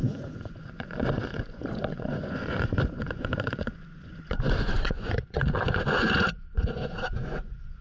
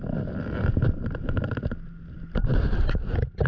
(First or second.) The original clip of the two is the second